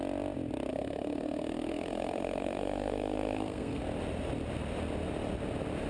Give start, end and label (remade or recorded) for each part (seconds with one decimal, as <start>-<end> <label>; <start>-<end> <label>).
0.0-0.7 recorded; 0.7-3.8 remade; 3.8-5.9 recorded